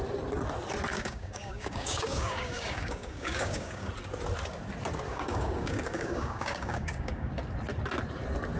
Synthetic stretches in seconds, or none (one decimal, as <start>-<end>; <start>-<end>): 0.9-3.9; 5.1-7.3

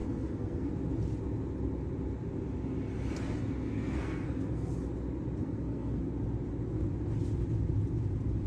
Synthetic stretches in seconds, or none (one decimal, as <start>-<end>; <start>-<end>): 0.0-0.7; 3.6-4.7; 5.4-6.0